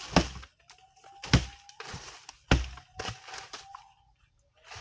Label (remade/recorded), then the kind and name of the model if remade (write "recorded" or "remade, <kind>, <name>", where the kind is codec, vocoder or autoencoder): recorded